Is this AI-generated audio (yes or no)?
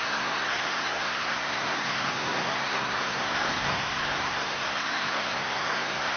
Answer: yes